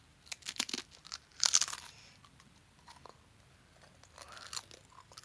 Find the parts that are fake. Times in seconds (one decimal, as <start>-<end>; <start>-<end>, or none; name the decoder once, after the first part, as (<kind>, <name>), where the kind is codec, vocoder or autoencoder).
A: 1.3-2.5 (vocoder, BigVGAN v2)

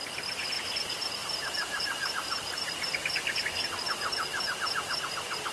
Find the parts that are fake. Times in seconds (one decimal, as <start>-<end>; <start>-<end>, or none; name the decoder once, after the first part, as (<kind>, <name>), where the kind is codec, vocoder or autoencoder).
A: 1.2-3.5 (vocoder, BigVGAN v2)

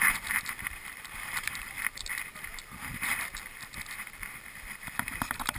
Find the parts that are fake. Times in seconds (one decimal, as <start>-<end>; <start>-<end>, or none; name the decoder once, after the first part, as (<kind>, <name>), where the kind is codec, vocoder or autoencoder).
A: 0.0-5.6 (vocoder, BigVGAN v2)

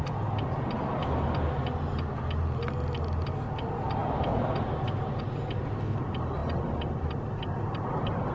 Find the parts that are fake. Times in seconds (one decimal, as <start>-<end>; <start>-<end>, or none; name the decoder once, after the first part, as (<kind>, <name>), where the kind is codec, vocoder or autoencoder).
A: 4.0-5.2 (vocoder, BigVGAN v2)

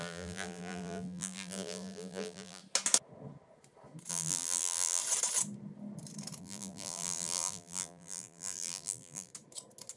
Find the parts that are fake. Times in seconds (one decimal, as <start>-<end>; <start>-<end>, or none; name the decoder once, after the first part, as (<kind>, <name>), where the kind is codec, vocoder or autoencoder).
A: 0.0-2.6 (vocoder, BigVGAN v2); 4.1-5.0; 6.4-9.3

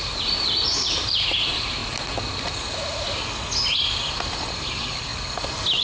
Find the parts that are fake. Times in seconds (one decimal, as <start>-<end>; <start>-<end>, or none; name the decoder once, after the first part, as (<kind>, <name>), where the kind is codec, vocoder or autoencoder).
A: 0.0-1.8 (vocoder, BigVGAN v2); 4.1-5.1